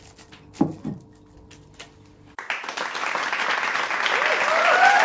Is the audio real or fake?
real